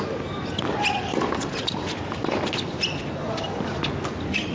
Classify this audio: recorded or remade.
recorded